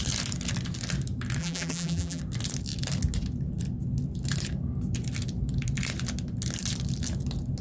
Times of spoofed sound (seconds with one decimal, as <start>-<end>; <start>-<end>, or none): 1.4-2.2